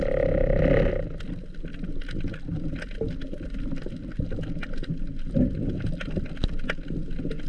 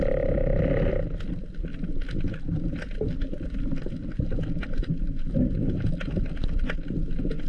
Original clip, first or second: first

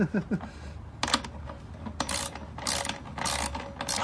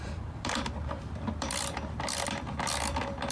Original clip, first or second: first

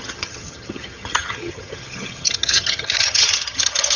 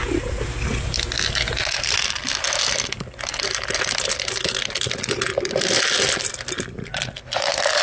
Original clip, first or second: second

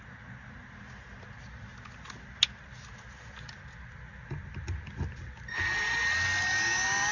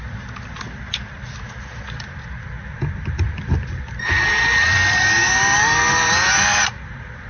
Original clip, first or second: first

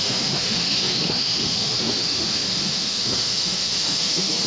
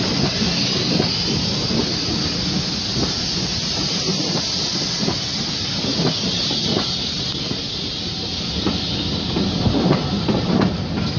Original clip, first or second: second